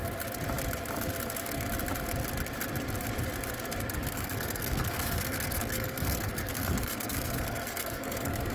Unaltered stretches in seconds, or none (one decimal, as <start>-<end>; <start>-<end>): 0.0-4.1